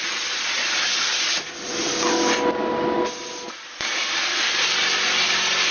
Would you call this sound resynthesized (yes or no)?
no